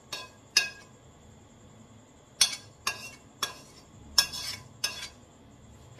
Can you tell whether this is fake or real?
real